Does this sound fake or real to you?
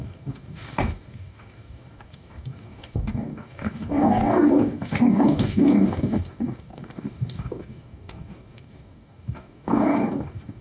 fake